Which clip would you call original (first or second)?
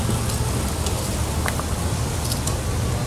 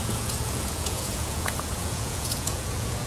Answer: first